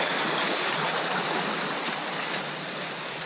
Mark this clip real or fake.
real